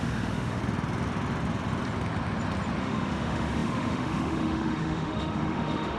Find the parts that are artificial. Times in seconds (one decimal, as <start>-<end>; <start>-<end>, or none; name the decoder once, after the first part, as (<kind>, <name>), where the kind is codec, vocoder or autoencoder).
0.0-0.6 (autoencoder, DAC-VAE); 2.8-6.0